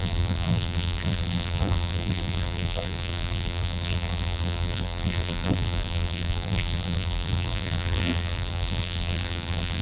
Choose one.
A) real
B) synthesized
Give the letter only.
B